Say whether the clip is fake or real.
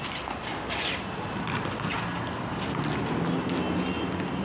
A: real